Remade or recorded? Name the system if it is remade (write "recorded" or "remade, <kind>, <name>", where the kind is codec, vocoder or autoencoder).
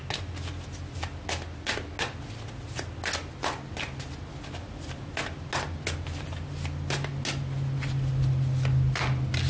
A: recorded